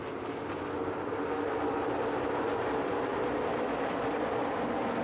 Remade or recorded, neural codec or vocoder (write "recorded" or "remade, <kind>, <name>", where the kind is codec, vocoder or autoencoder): recorded